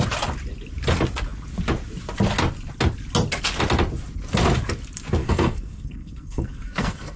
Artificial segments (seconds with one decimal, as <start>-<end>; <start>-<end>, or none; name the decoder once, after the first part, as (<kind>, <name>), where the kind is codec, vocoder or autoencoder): 5.2-7.2 (codec, SNAC)